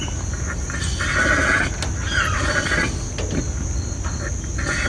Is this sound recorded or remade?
recorded